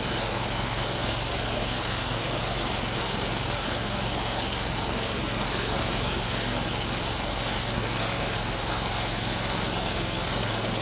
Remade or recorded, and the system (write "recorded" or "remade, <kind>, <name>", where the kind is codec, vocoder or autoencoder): remade, codec, SNAC